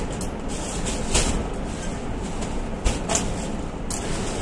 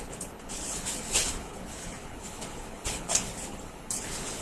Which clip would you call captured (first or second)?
first